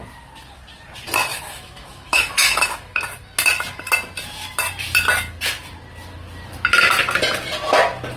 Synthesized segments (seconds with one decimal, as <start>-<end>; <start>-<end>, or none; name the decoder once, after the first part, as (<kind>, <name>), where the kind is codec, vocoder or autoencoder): 1.3-3.0 (autoencoder, DAC-VAE)